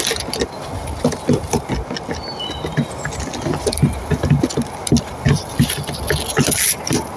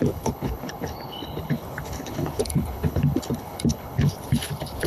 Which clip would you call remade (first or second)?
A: second